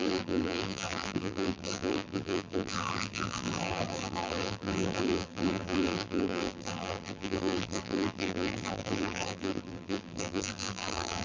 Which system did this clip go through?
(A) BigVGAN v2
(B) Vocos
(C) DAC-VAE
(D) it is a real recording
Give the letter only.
A